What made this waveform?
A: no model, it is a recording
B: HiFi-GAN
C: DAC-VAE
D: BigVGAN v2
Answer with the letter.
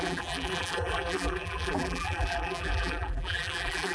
D